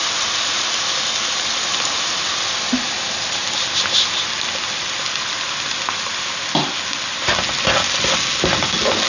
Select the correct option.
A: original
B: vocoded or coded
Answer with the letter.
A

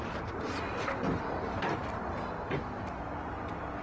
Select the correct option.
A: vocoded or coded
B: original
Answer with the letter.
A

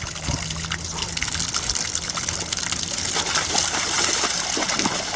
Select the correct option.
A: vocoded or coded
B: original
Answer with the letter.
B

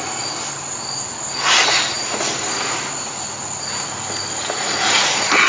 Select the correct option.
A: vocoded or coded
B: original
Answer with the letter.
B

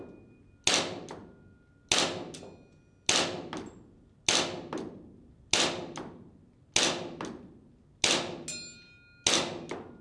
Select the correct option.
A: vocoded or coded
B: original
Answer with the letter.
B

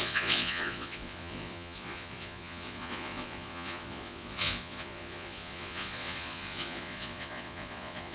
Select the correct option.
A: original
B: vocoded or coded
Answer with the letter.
B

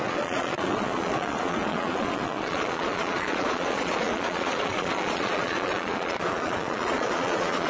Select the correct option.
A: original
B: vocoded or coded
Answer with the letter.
B